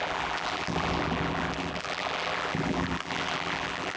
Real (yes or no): no